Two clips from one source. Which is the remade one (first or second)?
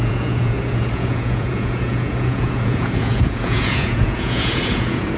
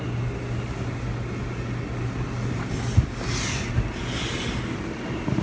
first